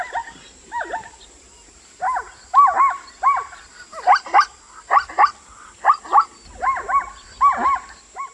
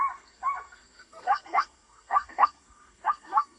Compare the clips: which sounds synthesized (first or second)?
second